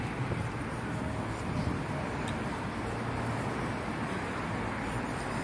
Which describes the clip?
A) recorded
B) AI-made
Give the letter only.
A